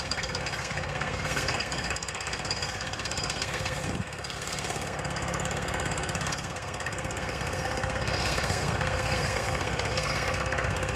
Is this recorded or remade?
remade